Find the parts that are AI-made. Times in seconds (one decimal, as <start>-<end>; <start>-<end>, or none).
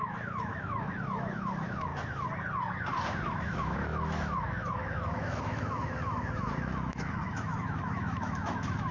0.0-1.9; 3.3-8.9